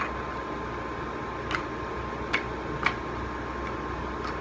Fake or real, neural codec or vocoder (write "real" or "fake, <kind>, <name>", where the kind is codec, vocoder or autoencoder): real